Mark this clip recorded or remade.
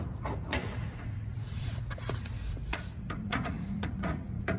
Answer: remade